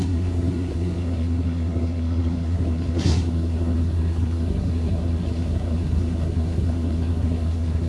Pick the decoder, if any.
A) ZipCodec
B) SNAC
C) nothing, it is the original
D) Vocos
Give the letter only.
B